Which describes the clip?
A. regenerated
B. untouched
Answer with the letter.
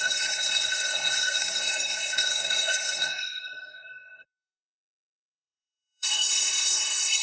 A